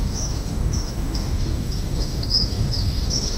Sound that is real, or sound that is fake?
fake